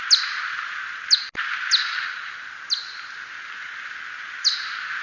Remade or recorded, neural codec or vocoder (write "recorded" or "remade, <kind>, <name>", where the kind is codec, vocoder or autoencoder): recorded